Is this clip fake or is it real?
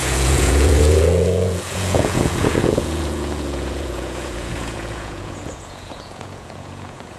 fake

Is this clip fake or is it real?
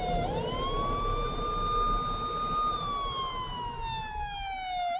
real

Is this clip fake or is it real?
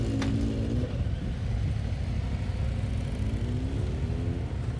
real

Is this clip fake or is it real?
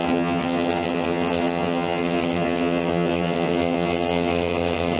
fake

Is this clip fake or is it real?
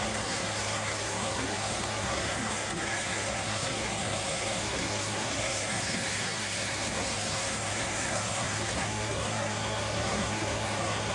fake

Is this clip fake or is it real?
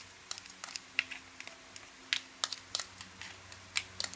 real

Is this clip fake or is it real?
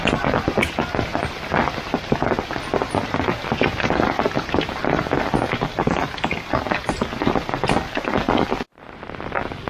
real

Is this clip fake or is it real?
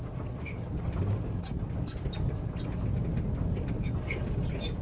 real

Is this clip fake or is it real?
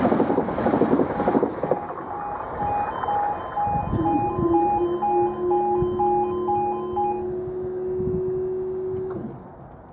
real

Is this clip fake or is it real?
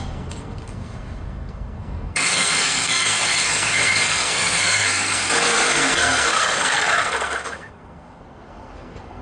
fake